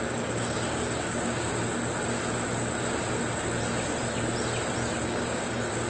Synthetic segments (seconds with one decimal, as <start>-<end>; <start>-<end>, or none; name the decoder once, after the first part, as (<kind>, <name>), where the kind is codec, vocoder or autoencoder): 0.0-1.5 (codec, DAC); 5.0-5.9